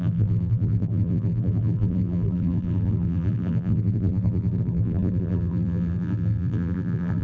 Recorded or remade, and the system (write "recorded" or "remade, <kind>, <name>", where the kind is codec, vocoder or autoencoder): remade, vocoder, BigVGAN v2